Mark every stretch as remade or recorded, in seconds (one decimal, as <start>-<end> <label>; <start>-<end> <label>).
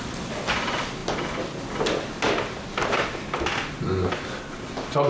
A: 0.0-5.1 recorded